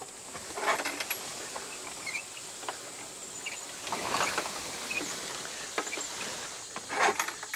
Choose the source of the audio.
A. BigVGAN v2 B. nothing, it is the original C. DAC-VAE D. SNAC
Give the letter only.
B